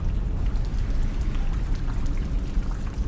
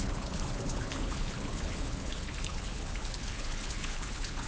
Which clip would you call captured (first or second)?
first